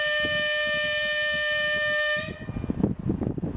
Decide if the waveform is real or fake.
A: real